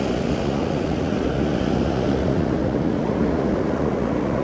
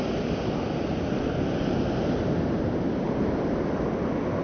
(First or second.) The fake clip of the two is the first